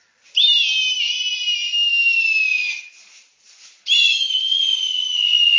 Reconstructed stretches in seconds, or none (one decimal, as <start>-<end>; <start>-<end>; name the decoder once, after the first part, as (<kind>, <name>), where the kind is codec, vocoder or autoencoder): 2.5-5.6 (vocoder, Vocos)